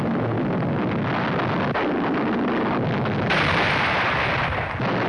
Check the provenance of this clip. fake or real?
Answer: real